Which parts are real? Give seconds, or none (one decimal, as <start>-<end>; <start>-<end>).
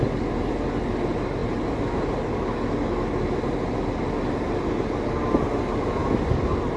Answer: 0.0-6.8